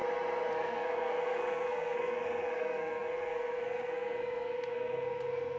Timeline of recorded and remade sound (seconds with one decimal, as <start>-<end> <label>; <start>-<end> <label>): 0.0-0.5 recorded; 0.5-5.6 remade